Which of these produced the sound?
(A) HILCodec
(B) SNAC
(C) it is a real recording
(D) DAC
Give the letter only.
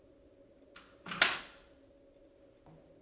C